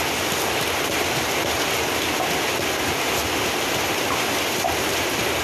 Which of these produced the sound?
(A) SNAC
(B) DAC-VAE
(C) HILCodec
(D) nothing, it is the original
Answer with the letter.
D